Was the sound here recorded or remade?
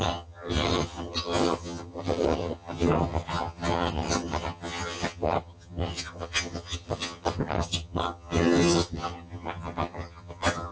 remade